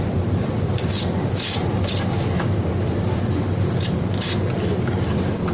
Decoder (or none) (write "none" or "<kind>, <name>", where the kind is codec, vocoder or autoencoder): none